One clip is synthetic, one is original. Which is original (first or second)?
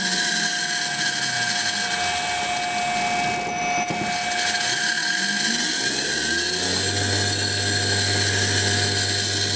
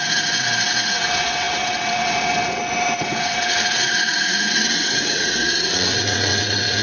first